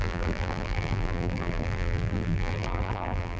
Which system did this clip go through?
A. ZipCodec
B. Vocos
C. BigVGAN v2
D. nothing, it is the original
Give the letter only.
C